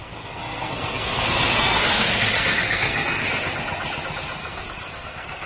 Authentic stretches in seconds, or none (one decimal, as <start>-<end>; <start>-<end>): 3.3-4.4